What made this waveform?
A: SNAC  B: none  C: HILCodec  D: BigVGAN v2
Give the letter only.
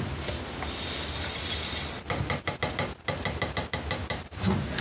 B